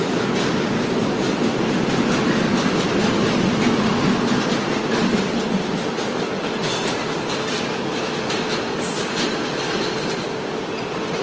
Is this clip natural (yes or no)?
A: no